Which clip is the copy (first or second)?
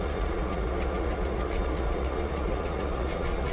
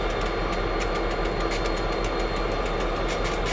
first